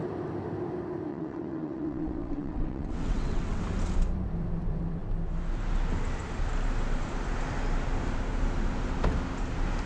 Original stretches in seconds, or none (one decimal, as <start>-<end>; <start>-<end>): 0.0-1.1; 3.6-9.9